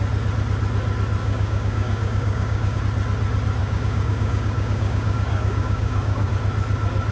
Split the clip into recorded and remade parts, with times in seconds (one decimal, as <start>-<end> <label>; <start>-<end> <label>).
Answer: 0.0-1.2 recorded; 1.2-2.8 remade; 2.8-3.6 recorded; 3.6-6.3 remade; 6.3-7.1 recorded